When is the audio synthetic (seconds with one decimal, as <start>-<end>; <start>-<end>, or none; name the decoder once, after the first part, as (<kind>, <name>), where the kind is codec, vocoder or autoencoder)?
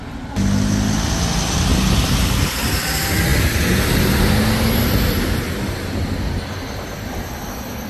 1.7-2.9 (vocoder, BigVGAN v2); 3.3-4.3